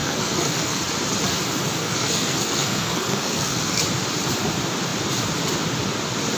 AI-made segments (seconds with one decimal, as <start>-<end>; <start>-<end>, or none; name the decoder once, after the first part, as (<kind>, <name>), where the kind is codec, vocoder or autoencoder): 0.0-0.8 (codec, SNAC); 1.8-3.8